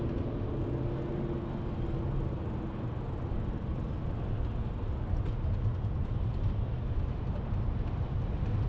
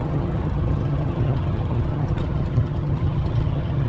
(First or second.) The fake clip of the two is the second